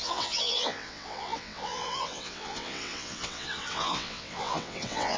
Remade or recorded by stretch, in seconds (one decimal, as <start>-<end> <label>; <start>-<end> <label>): 0.0-5.2 remade